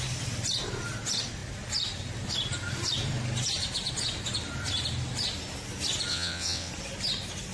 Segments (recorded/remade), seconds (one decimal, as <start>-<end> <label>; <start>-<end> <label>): 0.0-6.1 recorded; 6.1-6.7 remade; 6.7-7.5 recorded